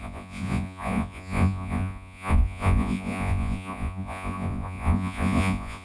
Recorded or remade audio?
remade